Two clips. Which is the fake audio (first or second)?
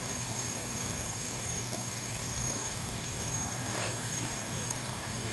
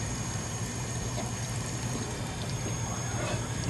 first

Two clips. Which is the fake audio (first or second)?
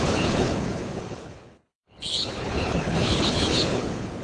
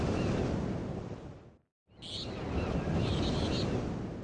first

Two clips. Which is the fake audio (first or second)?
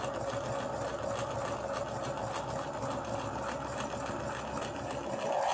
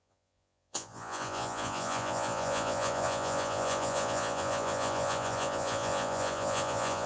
second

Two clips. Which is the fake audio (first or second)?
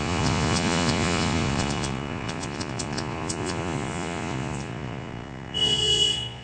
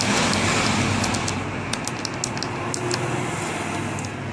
first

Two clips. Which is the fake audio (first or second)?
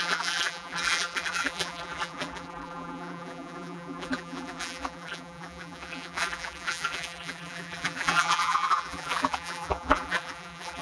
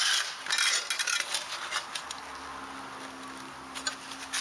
first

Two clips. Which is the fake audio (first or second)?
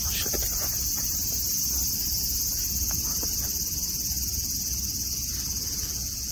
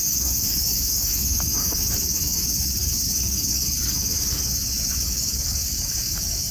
second